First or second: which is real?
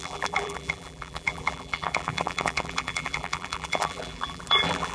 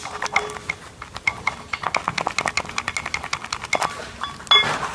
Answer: second